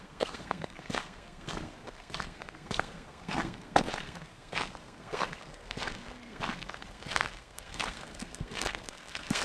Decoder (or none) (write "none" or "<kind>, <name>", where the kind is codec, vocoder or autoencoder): codec, SNAC